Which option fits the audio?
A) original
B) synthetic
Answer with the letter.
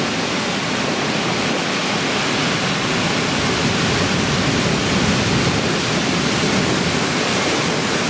A